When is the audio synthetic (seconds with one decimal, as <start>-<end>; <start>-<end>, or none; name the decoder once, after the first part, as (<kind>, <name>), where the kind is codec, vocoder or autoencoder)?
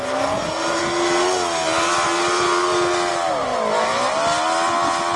none